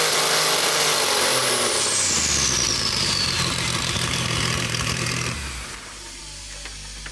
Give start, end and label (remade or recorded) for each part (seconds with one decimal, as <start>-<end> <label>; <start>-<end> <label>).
0.0-1.4 recorded; 1.4-2.1 remade; 2.1-2.7 recorded; 2.7-6.2 remade; 6.2-7.1 recorded